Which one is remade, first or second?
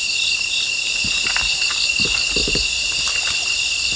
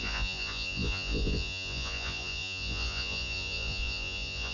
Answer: second